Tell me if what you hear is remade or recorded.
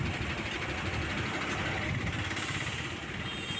recorded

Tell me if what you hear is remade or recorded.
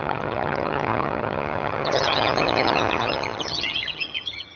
remade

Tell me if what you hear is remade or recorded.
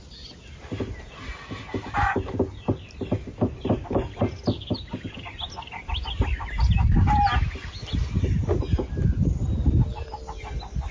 recorded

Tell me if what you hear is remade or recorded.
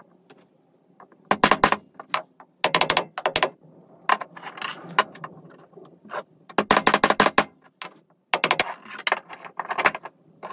recorded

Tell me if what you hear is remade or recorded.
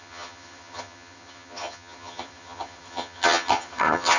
remade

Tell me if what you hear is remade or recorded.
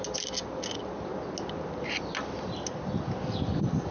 recorded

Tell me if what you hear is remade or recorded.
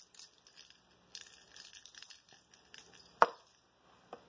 recorded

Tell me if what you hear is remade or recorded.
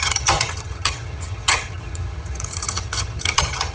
remade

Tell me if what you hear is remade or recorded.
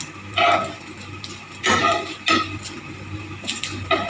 recorded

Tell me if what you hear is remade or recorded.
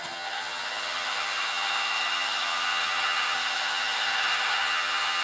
remade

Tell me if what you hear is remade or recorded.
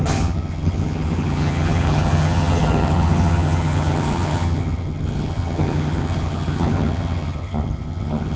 remade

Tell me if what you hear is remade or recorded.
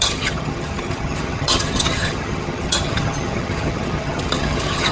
remade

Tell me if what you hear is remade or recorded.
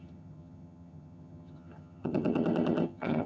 remade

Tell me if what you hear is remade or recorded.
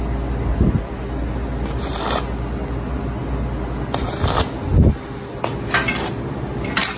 recorded